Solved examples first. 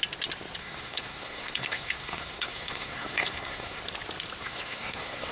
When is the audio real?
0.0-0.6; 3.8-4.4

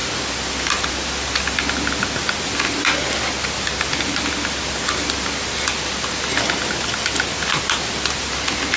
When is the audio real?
0.0-8.8